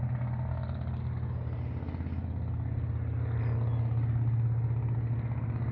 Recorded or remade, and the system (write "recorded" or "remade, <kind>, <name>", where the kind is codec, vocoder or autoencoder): recorded